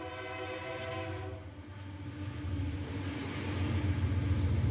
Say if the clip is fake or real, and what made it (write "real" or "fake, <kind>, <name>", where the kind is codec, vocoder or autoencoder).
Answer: real